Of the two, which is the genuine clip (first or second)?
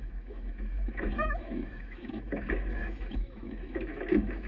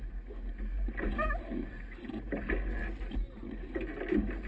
second